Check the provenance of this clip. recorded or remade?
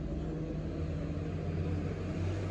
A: recorded